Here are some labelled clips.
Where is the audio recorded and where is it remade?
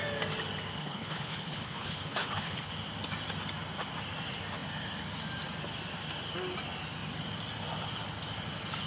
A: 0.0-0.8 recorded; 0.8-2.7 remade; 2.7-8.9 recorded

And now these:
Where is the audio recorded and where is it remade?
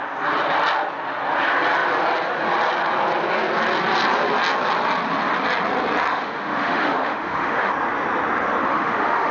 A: 0.0-6.1 recorded; 6.1-7.7 remade; 7.7-8.7 recorded; 8.7-9.3 remade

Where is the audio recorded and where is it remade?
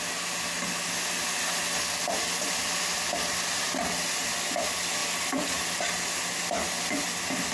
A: 0.0-7.5 recorded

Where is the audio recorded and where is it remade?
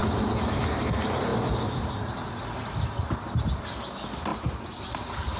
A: 0.0-5.4 recorded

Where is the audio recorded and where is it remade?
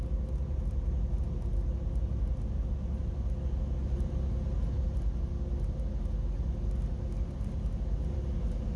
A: 0.0-8.8 recorded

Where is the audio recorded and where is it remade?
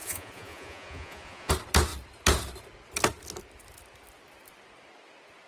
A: 0.0-1.5 remade; 1.5-5.5 recorded